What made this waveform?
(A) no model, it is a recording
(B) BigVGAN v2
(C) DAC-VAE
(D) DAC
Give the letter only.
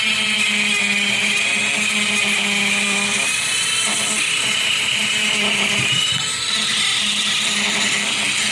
A